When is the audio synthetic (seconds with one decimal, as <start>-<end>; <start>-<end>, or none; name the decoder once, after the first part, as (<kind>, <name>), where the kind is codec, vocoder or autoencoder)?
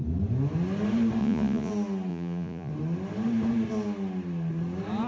1.2-1.7 (vocoder, Vocos); 2.1-2.7